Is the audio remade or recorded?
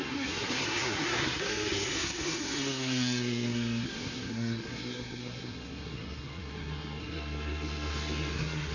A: remade